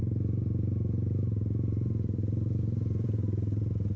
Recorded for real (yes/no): no